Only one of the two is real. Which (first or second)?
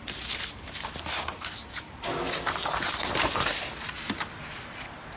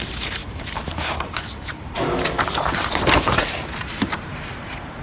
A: first